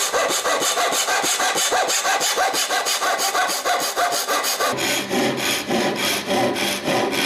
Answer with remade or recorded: recorded